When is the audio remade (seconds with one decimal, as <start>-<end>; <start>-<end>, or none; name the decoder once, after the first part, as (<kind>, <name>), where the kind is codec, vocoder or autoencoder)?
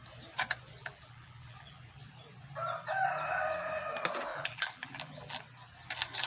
0.8-1.8 (vocoder, BigVGAN v2); 4.3-5.4